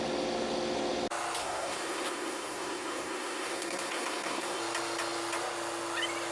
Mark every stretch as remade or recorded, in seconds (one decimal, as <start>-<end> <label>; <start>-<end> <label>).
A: 0.0-1.4 recorded; 1.4-4.6 remade; 4.6-6.3 recorded